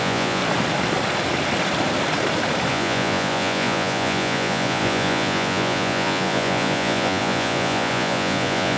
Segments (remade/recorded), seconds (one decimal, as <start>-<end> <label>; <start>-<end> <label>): 0.0-0.4 remade; 0.4-2.7 recorded; 2.7-8.8 remade